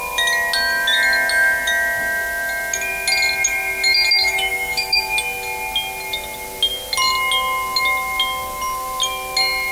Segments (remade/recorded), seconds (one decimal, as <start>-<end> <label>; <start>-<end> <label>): 0.0-4.2 recorded; 4.2-5.0 remade; 5.0-9.7 recorded